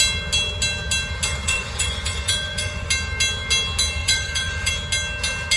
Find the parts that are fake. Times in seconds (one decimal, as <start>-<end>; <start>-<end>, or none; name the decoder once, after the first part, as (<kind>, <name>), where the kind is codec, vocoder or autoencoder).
1.4-2.9 (vocoder, Vocos); 4.0-4.7